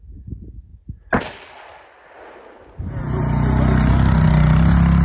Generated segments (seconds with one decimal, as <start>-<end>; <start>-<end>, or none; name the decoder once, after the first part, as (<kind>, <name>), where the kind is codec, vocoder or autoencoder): none